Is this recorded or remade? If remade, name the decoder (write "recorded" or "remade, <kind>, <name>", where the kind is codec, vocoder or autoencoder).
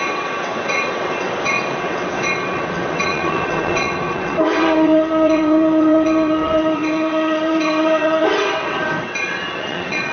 remade, vocoder, WaveNeXt